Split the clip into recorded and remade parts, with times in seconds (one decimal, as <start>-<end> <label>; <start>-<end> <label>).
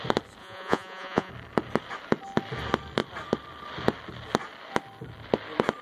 0.0-0.4 recorded; 0.4-1.3 remade; 1.3-5.8 recorded